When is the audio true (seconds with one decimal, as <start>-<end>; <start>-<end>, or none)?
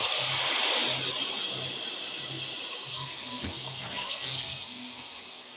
0.0-2.9